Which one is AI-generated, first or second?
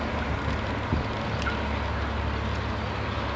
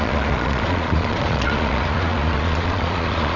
second